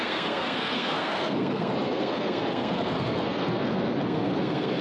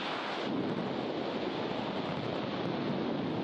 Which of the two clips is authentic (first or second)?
second